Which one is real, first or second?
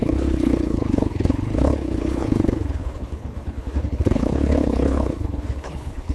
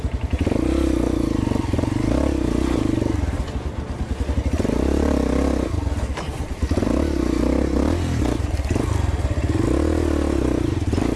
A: second